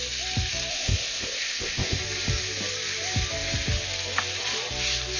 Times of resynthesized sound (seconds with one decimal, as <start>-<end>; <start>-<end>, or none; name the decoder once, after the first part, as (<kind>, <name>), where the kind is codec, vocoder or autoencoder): 0.7-2.0 (codec, ZipCodec)